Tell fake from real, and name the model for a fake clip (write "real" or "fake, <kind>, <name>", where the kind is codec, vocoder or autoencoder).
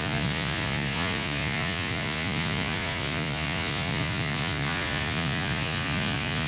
fake, vocoder, Vocos